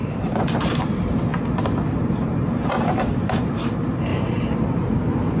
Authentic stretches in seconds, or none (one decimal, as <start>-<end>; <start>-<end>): 1.3-2.0; 4.1-5.4